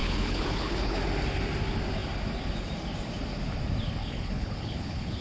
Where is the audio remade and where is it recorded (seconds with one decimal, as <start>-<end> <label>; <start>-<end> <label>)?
0.0-1.0 remade; 1.0-4.0 recorded; 4.0-5.2 remade